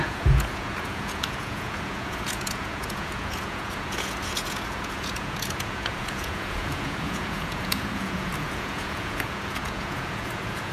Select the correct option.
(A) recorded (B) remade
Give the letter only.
B